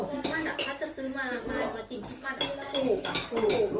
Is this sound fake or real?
real